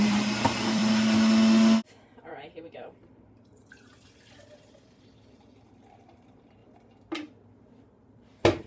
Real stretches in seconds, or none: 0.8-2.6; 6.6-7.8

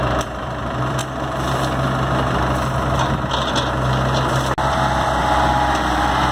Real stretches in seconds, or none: 1.0-4.7; 5.2-6.3

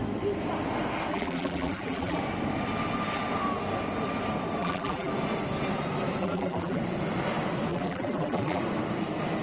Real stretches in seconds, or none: 0.0-1.1; 2.2-4.6; 5.1-6.2; 6.8-7.7; 8.6-9.4